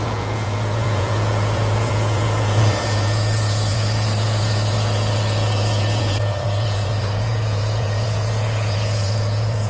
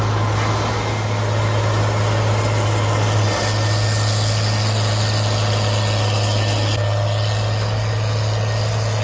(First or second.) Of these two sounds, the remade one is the first